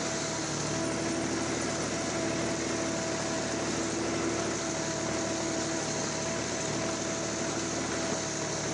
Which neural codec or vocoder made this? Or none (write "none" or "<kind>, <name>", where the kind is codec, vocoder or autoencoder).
none